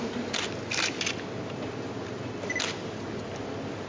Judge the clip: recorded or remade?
recorded